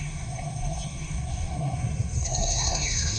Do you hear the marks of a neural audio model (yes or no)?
yes